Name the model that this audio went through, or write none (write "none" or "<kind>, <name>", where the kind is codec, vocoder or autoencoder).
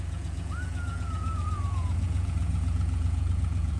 vocoder, Vocos